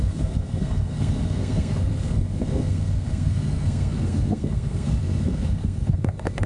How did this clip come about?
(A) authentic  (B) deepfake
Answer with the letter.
B